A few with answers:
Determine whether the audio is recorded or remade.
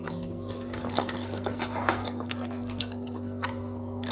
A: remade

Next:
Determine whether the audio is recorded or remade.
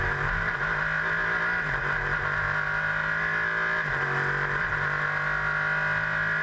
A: recorded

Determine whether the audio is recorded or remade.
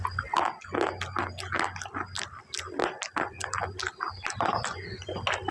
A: recorded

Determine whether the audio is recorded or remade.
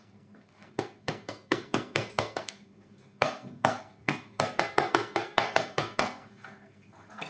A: remade